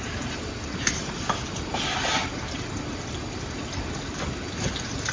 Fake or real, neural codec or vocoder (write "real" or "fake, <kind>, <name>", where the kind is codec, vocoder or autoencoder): real